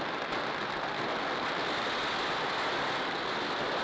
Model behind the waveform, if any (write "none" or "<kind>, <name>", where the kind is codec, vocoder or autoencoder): none